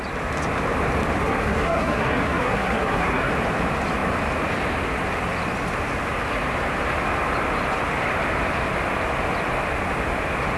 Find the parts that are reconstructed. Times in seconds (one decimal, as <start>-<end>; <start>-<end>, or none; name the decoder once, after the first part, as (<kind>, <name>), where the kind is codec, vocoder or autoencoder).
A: 1.2-3.3 (codec, SNAC)